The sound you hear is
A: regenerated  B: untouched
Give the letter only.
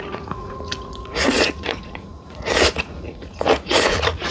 A